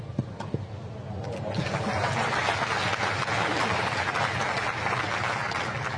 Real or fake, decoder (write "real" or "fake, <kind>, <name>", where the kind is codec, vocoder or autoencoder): real